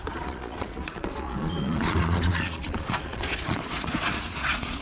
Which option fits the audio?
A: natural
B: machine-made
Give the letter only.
B